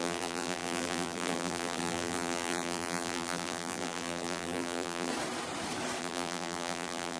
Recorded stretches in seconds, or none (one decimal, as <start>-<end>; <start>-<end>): 5.1-6.0